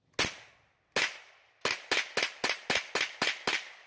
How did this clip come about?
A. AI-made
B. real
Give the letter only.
B